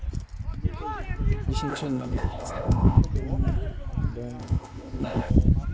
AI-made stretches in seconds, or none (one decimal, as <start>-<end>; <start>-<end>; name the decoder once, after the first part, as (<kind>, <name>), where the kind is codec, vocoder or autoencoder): 1.7-3.0 (codec, ZipCodec); 4.4-5.3